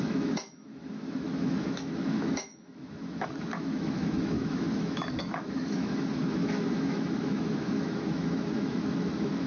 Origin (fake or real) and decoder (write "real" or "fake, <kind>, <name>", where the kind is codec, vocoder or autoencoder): fake, autoencoder, DAC-VAE